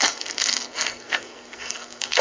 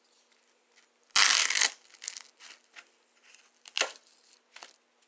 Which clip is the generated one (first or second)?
first